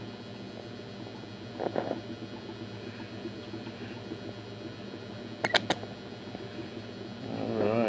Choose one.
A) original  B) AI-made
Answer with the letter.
A